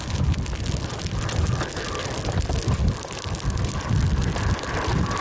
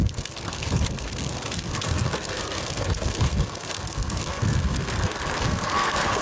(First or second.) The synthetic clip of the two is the second